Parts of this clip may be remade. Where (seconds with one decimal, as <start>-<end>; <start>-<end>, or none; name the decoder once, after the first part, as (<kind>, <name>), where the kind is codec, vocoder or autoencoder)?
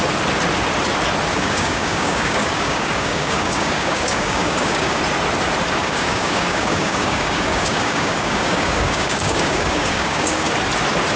1.3-5.0 (codec, DAC); 5.8-10.5